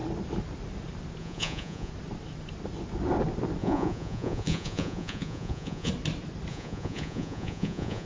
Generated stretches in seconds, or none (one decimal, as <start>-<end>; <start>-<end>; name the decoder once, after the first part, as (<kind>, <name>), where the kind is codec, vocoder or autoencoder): 1.2-1.9 (vocoder, Vocos); 3.6-5.9; 6.5-8.1